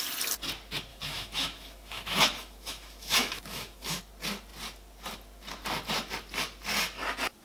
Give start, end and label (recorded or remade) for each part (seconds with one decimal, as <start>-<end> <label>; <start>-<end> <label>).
0.0-0.9 recorded; 0.9-4.0 remade; 4.0-7.4 recorded